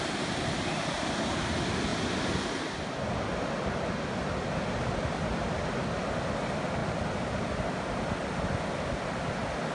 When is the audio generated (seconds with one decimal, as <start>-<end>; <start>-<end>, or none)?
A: none

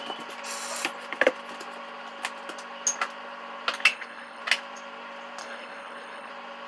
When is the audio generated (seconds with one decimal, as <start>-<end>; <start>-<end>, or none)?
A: 3.9-4.4; 5.4-6.3

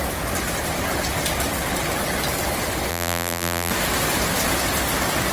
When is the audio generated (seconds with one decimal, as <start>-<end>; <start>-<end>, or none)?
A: 2.9-3.7

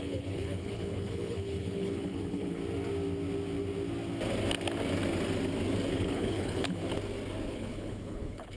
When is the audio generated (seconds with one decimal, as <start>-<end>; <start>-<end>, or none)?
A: 0.0-2.6; 5.9-6.8; 7.5-8.6

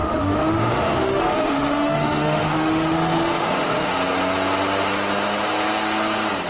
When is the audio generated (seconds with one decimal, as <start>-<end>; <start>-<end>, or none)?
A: 0.0-3.9

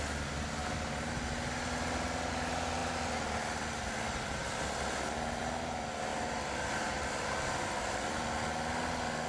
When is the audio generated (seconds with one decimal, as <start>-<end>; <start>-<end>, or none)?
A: 2.8-4.0

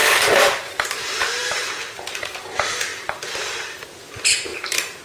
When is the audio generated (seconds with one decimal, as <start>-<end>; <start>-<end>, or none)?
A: 0.0-2.5; 2.9-3.9; 4.5-5.0